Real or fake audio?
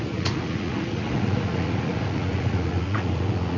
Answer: fake